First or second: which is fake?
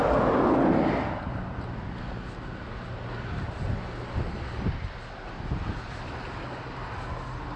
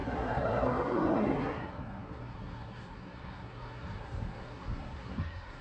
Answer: second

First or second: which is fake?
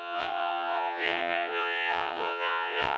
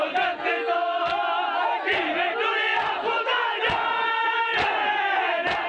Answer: first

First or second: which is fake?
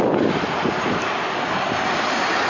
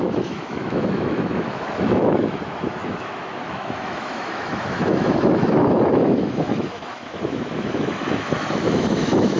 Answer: second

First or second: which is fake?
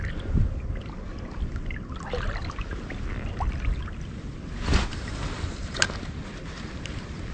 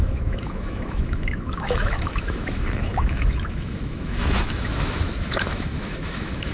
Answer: second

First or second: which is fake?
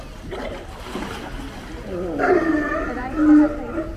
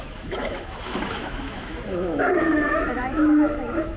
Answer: second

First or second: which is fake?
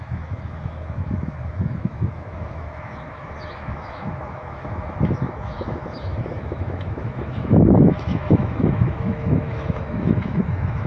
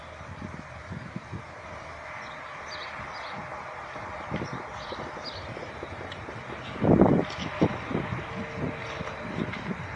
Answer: first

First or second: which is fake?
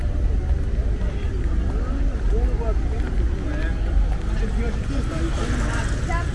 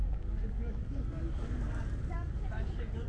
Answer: second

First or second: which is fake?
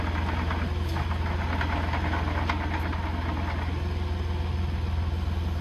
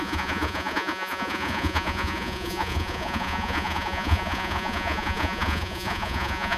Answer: second